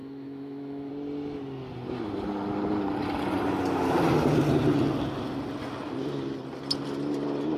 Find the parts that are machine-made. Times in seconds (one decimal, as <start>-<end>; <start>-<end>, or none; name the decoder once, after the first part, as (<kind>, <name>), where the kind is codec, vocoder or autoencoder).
0.0-0.9 (autoencoder, DAC-VAE)